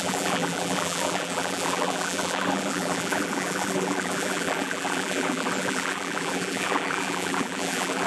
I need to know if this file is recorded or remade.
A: remade